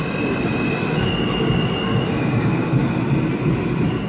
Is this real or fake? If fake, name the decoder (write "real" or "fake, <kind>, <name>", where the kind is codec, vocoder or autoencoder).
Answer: real